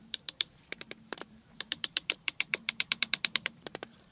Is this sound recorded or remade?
remade